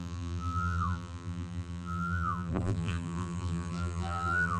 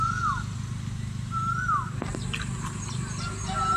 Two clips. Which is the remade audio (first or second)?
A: first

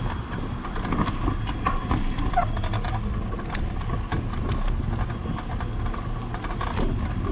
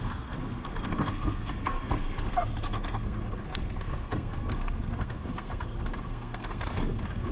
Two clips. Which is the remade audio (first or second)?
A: second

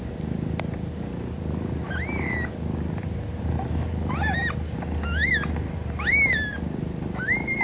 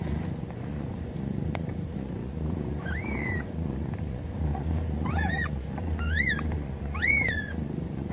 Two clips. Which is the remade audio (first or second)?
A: second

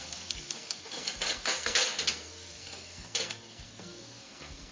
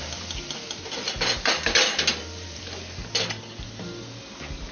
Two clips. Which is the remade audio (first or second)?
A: first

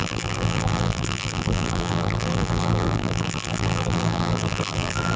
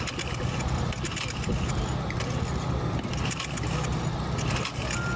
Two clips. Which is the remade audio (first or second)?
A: first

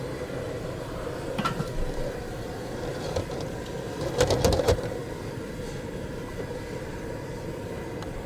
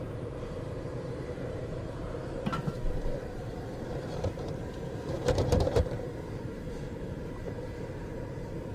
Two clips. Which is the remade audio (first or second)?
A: second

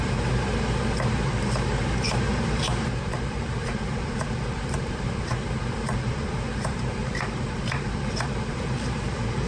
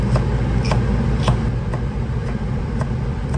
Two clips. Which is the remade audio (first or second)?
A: first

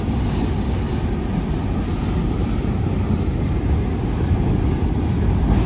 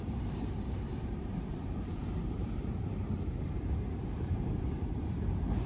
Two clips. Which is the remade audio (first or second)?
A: second